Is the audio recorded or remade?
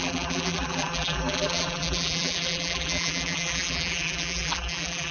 remade